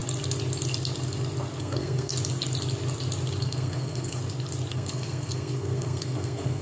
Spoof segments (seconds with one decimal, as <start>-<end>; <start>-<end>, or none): 1.6-2.1; 3.4-4.2; 4.7-6.6